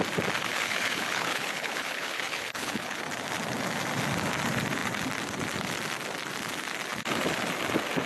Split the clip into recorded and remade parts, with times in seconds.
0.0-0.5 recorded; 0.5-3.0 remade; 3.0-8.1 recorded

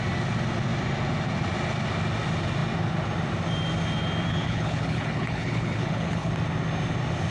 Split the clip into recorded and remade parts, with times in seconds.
0.0-4.3 recorded; 4.3-6.3 remade; 6.3-7.3 recorded